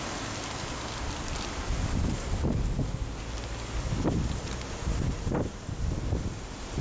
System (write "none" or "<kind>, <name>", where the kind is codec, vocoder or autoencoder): none